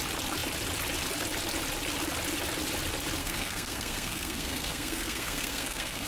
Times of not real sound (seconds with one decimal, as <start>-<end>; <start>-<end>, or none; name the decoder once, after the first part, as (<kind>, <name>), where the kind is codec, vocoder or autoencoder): 3.2-6.1 (codec, SNAC)